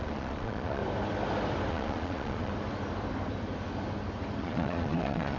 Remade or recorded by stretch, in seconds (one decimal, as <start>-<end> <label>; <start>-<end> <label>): 0.0-0.8 remade; 0.8-1.7 recorded; 1.7-2.5 remade; 2.5-4.4 recorded; 4.4-5.4 remade